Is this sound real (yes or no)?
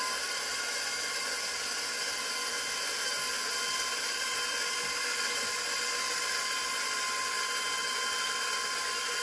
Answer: yes